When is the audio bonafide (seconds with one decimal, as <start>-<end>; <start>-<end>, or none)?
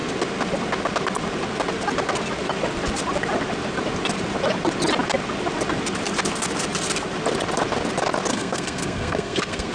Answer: 0.0-8.3